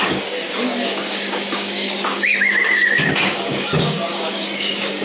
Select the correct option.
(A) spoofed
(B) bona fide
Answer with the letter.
A